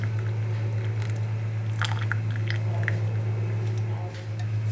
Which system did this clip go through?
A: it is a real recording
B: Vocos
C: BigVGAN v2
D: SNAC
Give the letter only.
A